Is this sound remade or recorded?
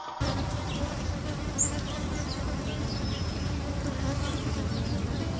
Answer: recorded